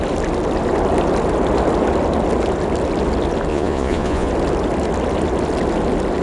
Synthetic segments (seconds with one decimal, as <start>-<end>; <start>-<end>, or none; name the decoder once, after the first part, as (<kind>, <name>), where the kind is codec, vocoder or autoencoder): 3.5-4.3 (vocoder, Vocos)